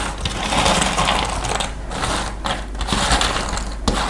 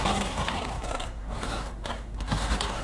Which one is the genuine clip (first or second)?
first